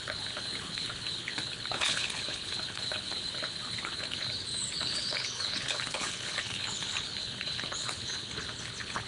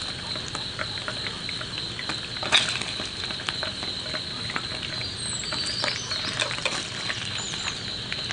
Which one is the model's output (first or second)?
first